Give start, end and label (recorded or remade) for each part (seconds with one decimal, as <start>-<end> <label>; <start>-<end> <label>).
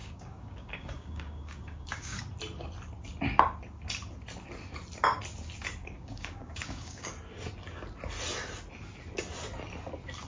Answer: 0.0-2.2 remade; 2.2-5.8 recorded; 5.8-7.1 remade; 7.1-10.3 recorded